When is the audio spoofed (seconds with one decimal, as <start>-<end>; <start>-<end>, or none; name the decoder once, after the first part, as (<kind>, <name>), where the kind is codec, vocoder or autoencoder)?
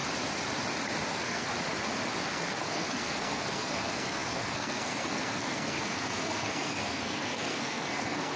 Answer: 1.1-1.5 (codec, SNAC); 2.2-8.4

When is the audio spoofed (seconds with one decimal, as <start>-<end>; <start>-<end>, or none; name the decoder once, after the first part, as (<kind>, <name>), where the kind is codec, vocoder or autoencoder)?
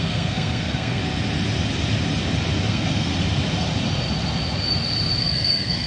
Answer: 0.0-1.0 (codec, SNAC); 2.7-3.1; 5.2-5.9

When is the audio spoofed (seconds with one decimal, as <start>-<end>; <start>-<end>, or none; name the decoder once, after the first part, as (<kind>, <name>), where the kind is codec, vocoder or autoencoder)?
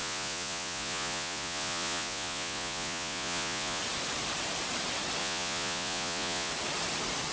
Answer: 0.0-3.8 (vocoder, Vocos); 5.2-6.5